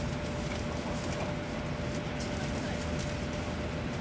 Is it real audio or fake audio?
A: real